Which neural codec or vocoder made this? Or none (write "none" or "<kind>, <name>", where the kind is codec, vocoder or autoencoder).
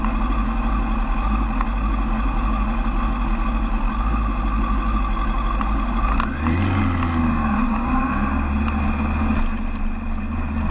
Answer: none